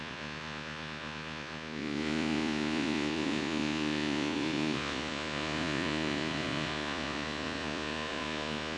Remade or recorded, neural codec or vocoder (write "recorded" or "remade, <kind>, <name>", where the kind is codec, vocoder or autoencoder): remade, vocoder, Vocos